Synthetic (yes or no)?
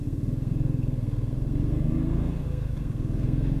yes